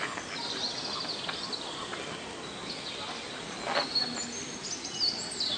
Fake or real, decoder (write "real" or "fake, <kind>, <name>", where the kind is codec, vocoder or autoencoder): real